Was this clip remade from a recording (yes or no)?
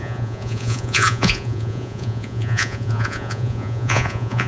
yes